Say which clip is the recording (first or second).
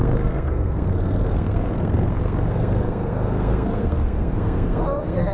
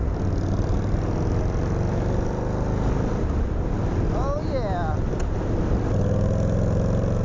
second